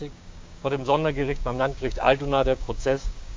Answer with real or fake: fake